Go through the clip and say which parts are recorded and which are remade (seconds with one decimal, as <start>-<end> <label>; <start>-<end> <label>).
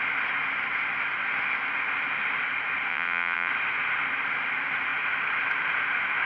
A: 0.0-2.9 recorded; 2.9-3.5 remade; 3.5-6.3 recorded